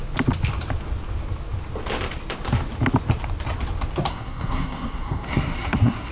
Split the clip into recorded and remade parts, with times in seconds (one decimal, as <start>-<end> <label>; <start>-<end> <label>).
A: 0.0-4.1 recorded; 4.1-6.1 remade